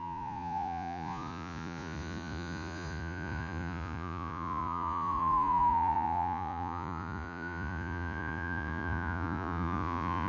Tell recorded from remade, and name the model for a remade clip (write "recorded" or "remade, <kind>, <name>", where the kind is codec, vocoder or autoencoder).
remade, vocoder, Vocos